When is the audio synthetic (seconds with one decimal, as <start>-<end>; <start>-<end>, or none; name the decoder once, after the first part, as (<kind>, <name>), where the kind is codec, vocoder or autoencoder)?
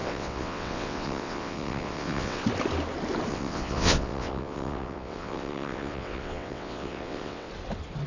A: 0.0-2.4 (vocoder, WaveNeXt); 3.3-7.5